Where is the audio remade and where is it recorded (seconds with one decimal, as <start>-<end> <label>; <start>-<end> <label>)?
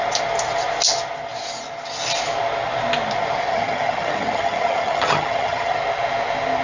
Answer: 0.0-3.5 recorded; 3.5-5.8 remade; 5.8-6.6 recorded